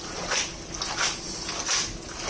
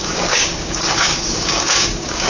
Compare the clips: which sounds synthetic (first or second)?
second